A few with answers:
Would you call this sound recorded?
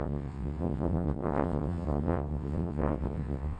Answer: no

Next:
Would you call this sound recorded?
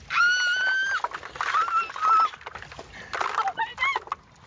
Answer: yes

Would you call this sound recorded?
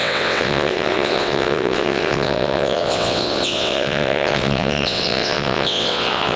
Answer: no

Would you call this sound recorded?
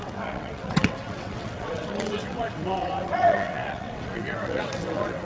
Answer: no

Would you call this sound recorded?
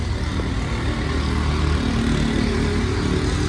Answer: yes